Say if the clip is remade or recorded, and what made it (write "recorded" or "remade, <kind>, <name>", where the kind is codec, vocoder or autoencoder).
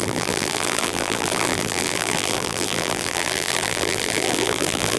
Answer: remade, vocoder, BigVGAN v2